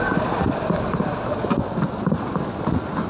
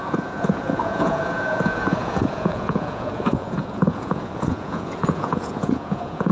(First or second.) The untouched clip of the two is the first